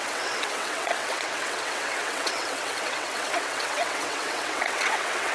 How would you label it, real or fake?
fake